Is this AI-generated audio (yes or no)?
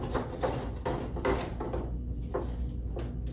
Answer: no